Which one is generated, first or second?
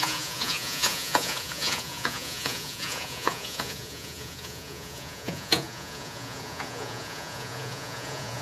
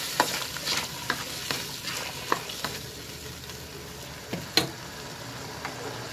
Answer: first